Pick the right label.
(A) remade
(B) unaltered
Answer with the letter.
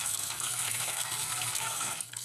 A